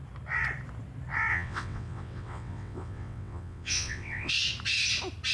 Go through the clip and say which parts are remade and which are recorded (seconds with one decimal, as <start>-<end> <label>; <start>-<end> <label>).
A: 0.0-1.3 recorded; 1.3-4.3 remade; 4.3-5.3 recorded